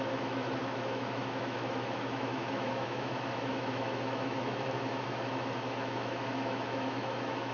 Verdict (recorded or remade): remade